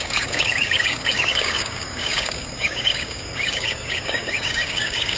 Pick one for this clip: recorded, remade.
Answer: remade